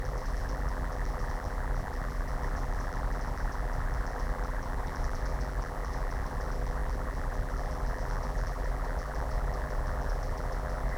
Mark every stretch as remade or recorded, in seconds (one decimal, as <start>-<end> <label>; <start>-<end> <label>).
0.0-11.0 remade